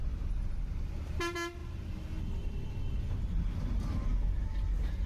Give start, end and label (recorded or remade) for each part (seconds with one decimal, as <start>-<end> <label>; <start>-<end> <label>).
0.0-5.1 recorded